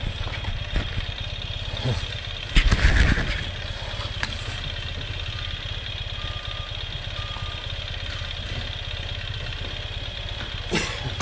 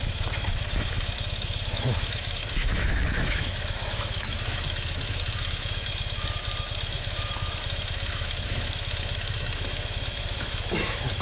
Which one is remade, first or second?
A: second